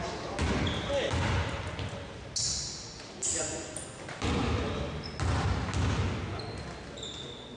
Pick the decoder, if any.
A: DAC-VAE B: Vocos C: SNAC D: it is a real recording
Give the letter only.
D